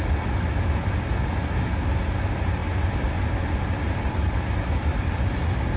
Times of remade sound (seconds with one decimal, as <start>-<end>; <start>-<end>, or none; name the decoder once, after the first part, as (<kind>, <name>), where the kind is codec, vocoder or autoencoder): none